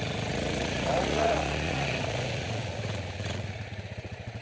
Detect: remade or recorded remade